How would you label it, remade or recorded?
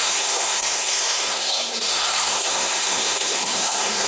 remade